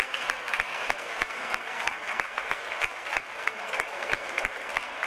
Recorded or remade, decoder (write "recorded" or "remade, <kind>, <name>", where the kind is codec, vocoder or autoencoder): remade, codec, SNAC